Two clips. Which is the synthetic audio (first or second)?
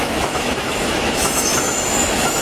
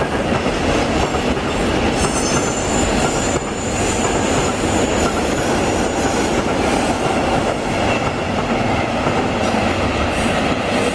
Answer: first